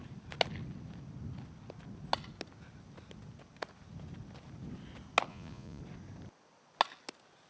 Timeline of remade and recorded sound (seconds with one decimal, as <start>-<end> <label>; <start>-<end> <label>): 0.0-5.3 recorded; 5.3-5.8 remade; 5.8-7.5 recorded